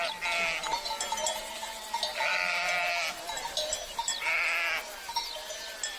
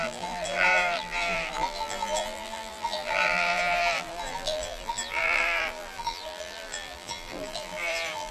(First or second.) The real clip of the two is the first